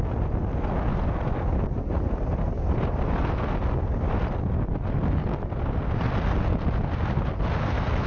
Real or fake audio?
real